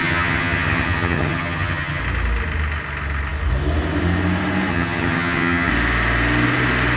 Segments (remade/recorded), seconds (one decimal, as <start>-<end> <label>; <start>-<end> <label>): 0.0-2.0 remade; 2.0-4.7 recorded; 4.7-5.7 remade; 5.7-7.0 recorded